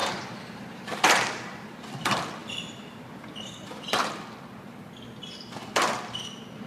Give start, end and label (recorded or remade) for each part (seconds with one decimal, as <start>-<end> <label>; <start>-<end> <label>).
0.0-1.6 remade; 1.6-6.7 recorded